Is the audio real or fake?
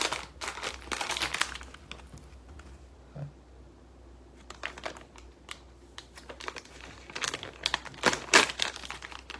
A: real